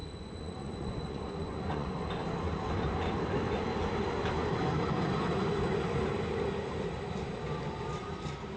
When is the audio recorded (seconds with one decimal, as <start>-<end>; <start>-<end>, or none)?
1.9-8.6

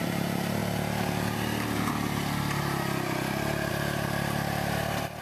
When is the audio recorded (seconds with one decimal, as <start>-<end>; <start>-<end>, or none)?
0.6-3.7

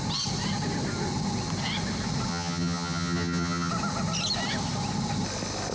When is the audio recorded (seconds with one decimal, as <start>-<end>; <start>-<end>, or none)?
0.0-2.3; 3.7-5.7

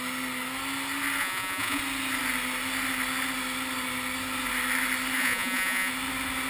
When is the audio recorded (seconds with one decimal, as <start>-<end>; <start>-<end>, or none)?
0.0-1.2; 1.8-5.2; 5.9-6.5

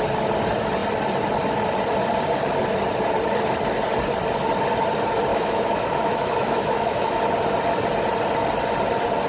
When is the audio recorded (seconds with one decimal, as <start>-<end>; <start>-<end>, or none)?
0.0-5.3; 7.2-9.3

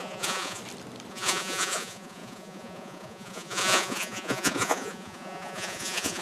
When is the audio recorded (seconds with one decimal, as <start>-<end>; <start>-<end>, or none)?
0.6-1.1